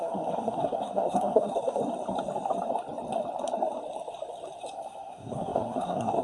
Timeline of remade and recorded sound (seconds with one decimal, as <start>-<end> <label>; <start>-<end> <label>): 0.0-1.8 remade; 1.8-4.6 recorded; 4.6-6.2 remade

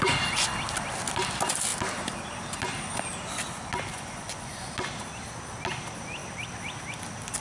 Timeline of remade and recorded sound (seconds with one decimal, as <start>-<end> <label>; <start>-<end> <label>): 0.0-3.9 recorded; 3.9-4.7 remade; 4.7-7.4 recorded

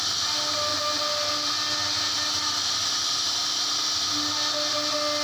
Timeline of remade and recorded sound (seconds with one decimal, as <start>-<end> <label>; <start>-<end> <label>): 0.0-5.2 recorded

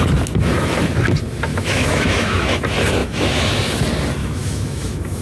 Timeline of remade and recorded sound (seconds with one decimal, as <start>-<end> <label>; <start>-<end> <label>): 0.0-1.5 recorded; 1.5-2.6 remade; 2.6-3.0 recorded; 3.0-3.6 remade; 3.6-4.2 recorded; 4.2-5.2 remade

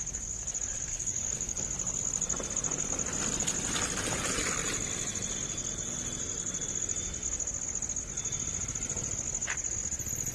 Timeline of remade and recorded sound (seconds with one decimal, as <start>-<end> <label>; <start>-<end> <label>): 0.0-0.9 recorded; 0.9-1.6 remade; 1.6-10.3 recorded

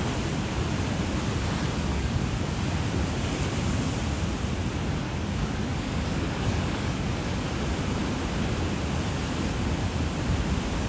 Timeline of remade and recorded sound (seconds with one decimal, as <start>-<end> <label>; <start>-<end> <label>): 0.0-1.9 recorded; 1.9-2.6 remade; 2.6-5.0 recorded; 5.0-7.2 remade; 7.2-10.9 recorded